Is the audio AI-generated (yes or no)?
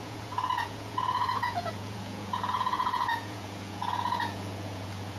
yes